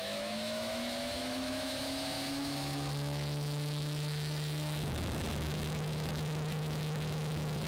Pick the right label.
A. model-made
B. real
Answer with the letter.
A